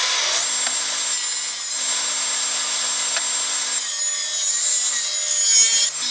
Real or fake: real